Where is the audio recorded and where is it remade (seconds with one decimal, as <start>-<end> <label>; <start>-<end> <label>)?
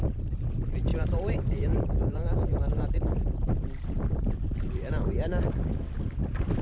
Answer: 0.0-0.9 recorded; 0.9-4.9 remade; 4.9-6.6 recorded